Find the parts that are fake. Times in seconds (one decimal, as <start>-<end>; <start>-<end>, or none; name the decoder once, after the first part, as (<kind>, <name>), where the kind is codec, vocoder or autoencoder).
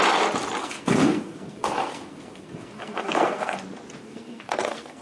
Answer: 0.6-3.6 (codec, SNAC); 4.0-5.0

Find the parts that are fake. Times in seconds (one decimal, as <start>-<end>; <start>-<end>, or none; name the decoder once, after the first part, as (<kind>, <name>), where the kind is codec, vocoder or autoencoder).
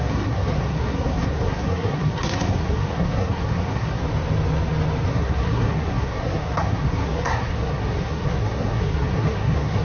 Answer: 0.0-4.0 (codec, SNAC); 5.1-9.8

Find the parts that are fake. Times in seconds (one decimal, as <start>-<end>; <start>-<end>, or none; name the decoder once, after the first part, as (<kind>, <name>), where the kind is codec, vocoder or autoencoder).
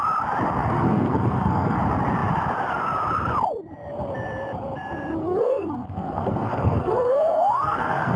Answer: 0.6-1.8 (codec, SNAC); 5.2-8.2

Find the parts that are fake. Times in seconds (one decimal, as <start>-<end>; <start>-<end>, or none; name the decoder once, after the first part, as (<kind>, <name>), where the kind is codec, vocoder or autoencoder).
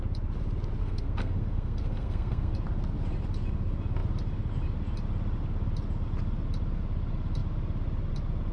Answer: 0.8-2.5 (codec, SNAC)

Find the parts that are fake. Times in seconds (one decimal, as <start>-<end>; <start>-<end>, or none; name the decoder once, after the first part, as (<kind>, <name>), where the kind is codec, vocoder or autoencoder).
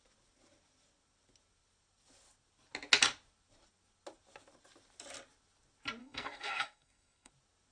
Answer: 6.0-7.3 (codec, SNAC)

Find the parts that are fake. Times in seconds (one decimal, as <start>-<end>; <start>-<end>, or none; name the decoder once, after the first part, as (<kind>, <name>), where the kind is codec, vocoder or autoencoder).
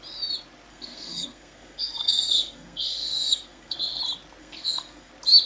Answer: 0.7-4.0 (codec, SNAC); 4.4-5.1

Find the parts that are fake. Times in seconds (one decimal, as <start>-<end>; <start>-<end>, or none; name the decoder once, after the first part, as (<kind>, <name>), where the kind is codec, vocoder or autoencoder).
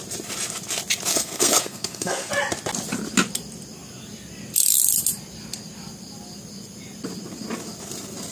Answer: 1.1-2.3 (codec, SNAC)